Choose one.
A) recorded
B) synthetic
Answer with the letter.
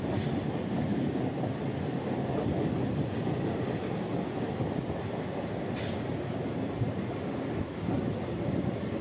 A